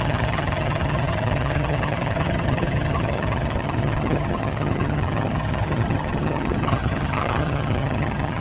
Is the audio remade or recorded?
remade